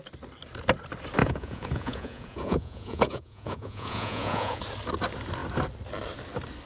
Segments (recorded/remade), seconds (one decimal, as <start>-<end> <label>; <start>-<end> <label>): 0.0-1.2 recorded; 1.2-4.6 remade; 4.6-6.7 recorded